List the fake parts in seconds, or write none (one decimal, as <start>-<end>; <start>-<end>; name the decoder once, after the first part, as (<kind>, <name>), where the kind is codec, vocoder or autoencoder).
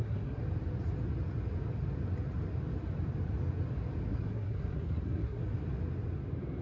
0.0-0.4 (codec, SNAC); 4.1-5.4